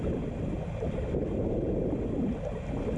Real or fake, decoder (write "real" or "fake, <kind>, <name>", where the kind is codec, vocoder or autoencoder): real